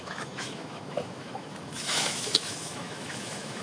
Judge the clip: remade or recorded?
remade